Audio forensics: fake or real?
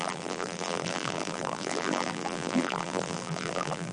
fake